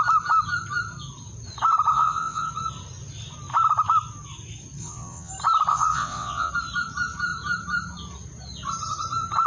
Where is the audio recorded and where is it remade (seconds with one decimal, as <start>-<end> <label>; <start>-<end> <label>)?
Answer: 0.0-1.9 recorded; 1.9-2.5 remade; 2.5-4.8 recorded; 4.8-5.3 remade; 5.3-5.7 recorded; 5.7-6.5 remade; 6.5-9.5 recorded